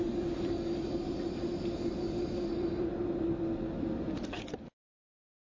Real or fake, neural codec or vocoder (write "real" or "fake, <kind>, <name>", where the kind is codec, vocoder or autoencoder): real